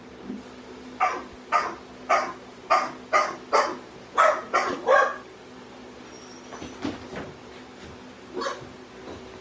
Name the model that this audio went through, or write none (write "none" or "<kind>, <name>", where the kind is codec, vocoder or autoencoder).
none